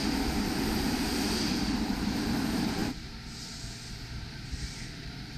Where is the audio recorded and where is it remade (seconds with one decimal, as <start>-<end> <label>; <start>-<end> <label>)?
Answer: 0.0-0.6 recorded; 0.6-2.8 remade; 2.8-3.9 recorded; 3.9-5.4 remade